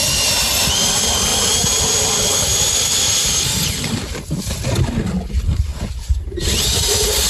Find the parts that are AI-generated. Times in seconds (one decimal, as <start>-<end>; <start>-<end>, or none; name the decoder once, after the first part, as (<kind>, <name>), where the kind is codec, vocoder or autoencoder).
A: 0.0-1.3 (vocoder, BigVGAN v2); 5.3-7.3